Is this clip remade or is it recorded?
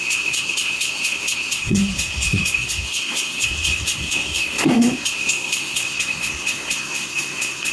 remade